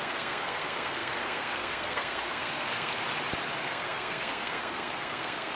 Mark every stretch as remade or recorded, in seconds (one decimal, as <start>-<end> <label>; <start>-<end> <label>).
0.0-3.0 remade; 3.0-3.6 recorded; 3.6-5.6 remade